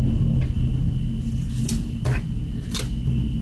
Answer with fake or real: real